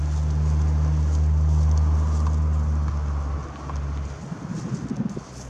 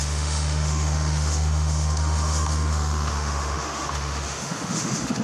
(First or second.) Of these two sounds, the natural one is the first